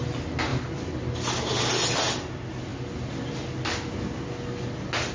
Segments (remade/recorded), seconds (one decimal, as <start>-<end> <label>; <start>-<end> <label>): 0.0-5.1 recorded